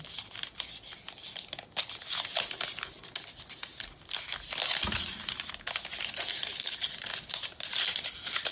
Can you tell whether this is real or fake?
real